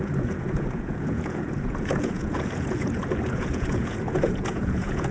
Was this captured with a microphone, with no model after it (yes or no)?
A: no